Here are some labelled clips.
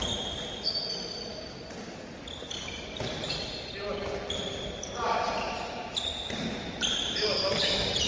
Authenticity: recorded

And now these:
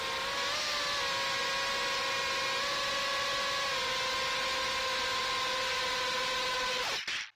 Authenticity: recorded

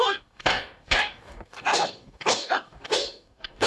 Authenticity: remade